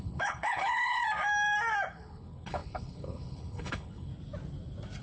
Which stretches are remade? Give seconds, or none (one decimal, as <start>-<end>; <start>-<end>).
0.0-1.0; 1.9-4.1

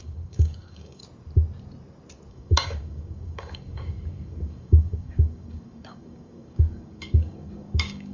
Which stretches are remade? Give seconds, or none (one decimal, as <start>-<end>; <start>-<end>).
0.0-1.0; 2.3-8.1

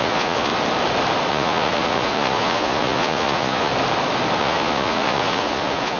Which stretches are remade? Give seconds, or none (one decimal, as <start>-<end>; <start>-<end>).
0.0-0.5; 1.3-3.7; 4.4-6.0

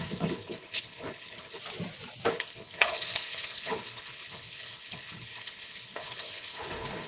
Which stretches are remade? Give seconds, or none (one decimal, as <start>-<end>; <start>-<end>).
0.0-1.6; 2.3-7.1

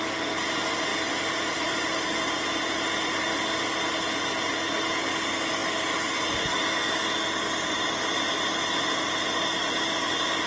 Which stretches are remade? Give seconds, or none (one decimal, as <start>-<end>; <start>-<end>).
0.9-4.2

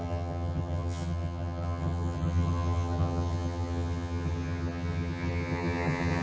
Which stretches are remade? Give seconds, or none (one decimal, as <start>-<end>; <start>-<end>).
0.0-6.2

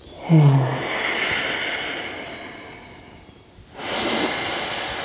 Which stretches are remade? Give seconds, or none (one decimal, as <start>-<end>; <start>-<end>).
none

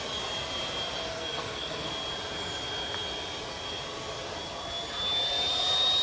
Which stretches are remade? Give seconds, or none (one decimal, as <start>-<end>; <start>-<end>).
1.1-1.9